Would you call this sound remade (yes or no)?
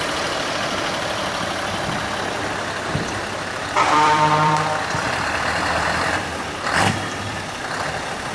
yes